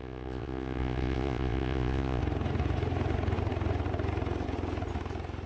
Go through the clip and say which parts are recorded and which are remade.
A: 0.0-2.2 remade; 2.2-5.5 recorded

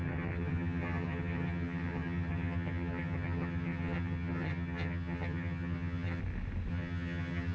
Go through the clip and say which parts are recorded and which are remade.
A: 0.0-6.2 remade; 6.2-6.7 recorded; 6.7-7.5 remade

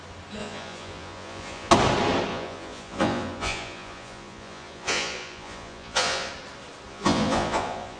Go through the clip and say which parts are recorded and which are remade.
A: 0.0-0.4 recorded; 0.4-1.7 remade; 1.7-2.3 recorded; 2.3-6.3 remade; 6.3-6.9 recorded; 6.9-8.0 remade

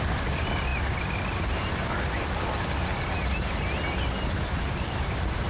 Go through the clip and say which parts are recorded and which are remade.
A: 0.0-5.5 recorded